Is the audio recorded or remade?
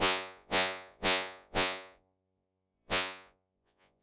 remade